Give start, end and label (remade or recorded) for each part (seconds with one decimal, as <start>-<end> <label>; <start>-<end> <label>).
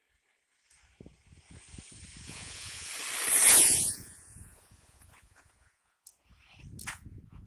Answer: 0.0-2.2 recorded; 2.2-2.9 remade; 2.9-3.5 recorded; 3.5-6.1 remade; 6.1-6.9 recorded; 6.9-7.5 remade